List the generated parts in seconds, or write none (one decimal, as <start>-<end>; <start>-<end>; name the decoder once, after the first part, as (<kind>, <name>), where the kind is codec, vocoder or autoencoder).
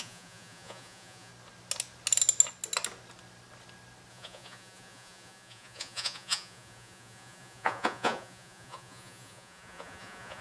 0.0-1.3 (vocoder, Vocos); 4.1-10.4